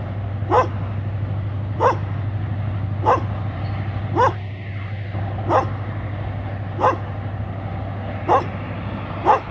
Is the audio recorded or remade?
remade